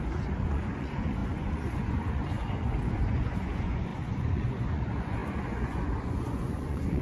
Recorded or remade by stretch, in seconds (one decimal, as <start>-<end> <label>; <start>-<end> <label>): 0.0-7.0 remade